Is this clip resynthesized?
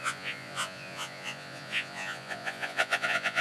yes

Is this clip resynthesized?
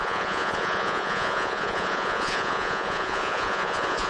yes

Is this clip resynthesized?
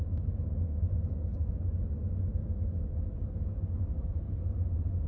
no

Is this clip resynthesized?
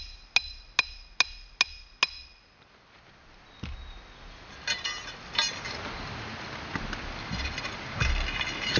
no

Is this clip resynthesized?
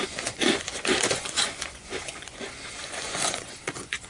yes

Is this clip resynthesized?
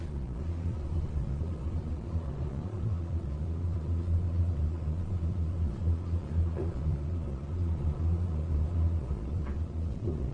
yes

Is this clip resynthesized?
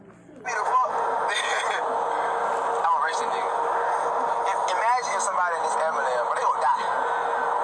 no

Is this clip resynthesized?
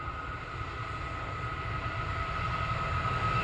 no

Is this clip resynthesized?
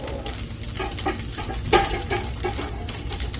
no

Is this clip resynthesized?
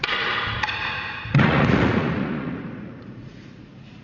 yes